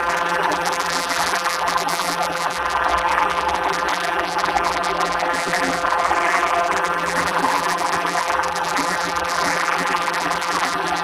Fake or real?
fake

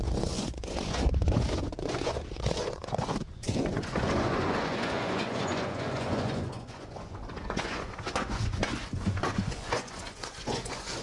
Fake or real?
fake